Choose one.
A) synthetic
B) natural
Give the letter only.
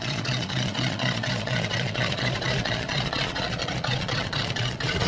A